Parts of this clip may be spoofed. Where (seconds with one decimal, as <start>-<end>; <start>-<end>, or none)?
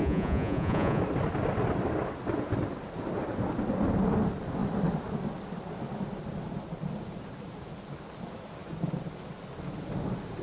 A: 0.0-1.0